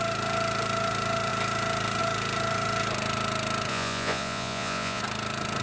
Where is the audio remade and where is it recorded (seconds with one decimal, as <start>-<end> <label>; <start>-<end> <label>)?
0.0-3.7 recorded; 3.7-5.0 remade; 5.0-5.6 recorded